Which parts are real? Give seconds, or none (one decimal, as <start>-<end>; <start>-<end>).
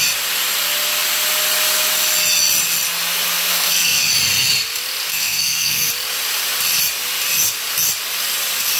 0.0-3.5; 4.1-5.1; 5.9-8.8